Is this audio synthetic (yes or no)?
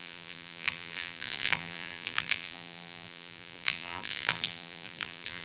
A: yes